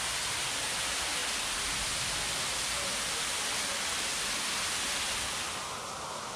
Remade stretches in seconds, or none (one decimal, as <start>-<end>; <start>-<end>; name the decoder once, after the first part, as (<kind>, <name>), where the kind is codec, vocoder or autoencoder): none